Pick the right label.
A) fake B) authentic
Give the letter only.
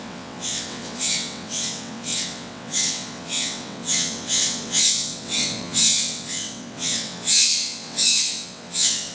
A